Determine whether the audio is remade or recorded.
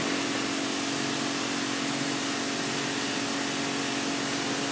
recorded